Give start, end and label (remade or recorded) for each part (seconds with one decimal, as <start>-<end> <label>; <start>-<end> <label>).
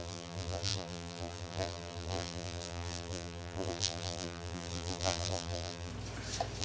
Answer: 0.0-5.9 remade; 5.9-6.6 recorded